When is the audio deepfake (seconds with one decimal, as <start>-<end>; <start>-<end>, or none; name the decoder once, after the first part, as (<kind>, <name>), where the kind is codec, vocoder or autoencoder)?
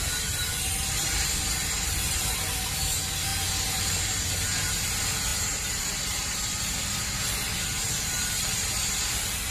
0.0-3.3 (vocoder, BigVGAN v2); 3.8-9.5